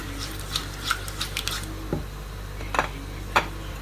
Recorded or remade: recorded